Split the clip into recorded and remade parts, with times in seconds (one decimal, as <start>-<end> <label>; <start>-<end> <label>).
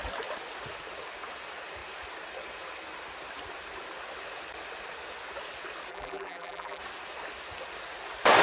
0.0-5.9 recorded; 5.9-6.8 remade; 6.8-8.4 recorded